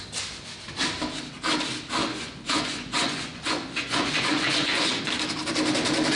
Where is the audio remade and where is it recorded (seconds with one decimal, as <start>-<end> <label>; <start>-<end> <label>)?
0.0-2.0 recorded; 2.0-5.0 remade; 5.0-6.2 recorded